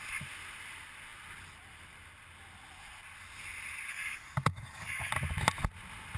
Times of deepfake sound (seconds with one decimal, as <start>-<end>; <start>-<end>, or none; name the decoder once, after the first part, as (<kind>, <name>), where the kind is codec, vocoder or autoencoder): 3.9-5.1 (codec, DAC)